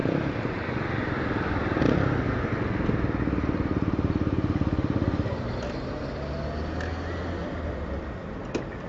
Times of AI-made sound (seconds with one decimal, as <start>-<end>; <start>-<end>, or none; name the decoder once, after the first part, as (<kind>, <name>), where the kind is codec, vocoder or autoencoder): 0.0-3.2 (vocoder, BigVGAN v2); 7.4-8.4